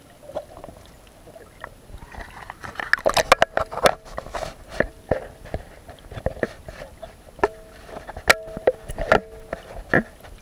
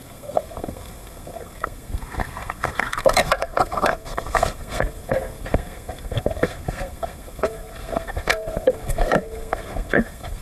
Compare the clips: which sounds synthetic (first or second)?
second